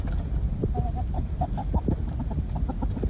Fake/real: real